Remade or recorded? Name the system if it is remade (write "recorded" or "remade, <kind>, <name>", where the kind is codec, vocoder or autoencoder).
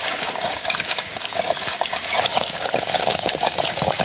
remade, codec, DAC